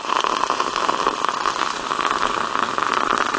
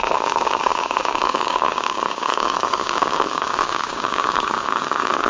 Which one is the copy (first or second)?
second